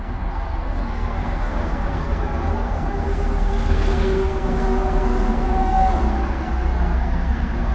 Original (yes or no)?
no